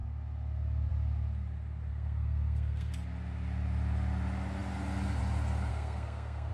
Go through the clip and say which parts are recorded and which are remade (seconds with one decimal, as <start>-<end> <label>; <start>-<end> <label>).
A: 0.0-1.9 recorded; 1.9-2.9 remade; 2.9-5.7 recorded; 5.7-6.5 remade